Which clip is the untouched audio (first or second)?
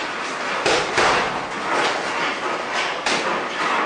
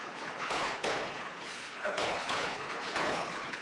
first